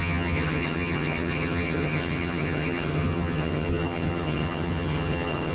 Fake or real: fake